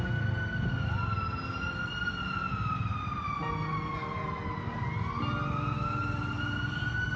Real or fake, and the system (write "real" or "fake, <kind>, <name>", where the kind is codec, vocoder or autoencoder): real